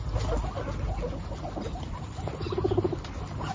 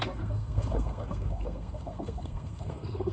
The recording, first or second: first